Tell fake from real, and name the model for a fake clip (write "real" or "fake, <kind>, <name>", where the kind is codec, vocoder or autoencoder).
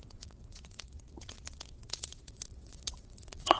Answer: fake, vocoder, WaveNeXt